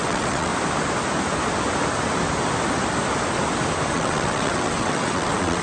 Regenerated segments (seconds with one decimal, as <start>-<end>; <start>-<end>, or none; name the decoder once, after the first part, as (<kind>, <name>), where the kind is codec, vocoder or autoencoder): 0.0-0.5 (vocoder, WaveNeXt); 3.9-5.6